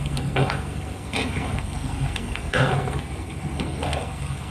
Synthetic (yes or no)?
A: yes